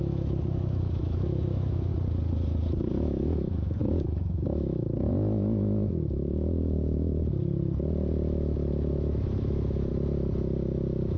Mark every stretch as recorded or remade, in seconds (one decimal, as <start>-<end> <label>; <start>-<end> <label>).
0.0-1.9 remade; 1.9-2.9 recorded; 2.9-7.2 remade; 7.2-8.9 recorded; 8.9-9.9 remade; 9.9-11.2 recorded